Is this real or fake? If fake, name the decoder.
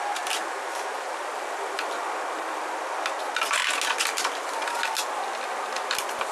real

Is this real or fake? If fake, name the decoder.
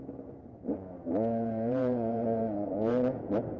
fake, vocoder, Vocos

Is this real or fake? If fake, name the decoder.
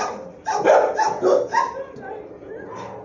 real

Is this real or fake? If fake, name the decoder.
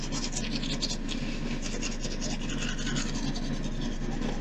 real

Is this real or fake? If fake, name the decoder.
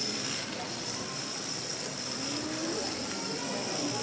real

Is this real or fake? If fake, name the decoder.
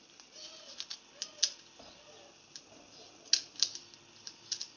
real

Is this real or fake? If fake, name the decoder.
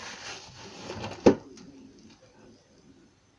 real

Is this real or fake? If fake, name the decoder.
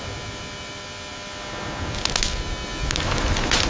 real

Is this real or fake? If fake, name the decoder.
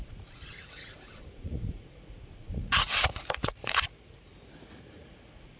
fake, vocoder, Vocos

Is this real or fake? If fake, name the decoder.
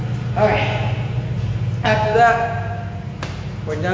real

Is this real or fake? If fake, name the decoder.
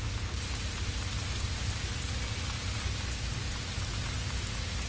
real